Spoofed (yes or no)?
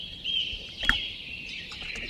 yes